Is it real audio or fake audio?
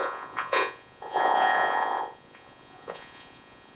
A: fake